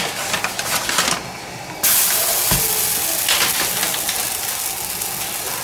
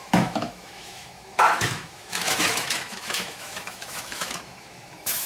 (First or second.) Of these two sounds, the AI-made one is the second